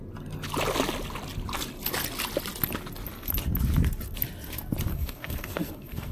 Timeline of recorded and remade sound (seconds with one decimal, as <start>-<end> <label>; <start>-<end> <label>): 0.0-4.9 recorded; 4.9-6.1 remade